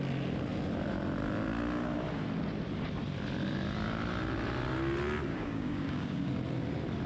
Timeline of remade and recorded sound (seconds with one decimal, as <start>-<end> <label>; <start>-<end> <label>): 0.0-5.3 recorded; 5.3-6.3 remade; 6.3-7.1 recorded